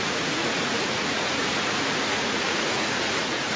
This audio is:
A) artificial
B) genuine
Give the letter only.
A